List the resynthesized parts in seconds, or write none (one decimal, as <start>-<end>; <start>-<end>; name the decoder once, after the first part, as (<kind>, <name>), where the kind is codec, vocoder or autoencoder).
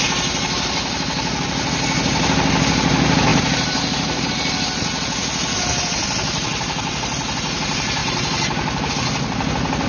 3.3-4.3 (vocoder, BigVGAN v2); 8.0-8.9